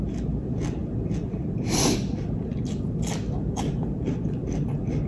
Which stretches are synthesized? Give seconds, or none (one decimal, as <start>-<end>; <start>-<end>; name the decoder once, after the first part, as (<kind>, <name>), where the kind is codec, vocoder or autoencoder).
none